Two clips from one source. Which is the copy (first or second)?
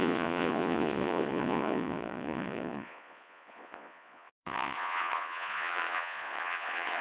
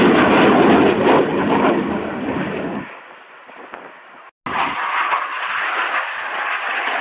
first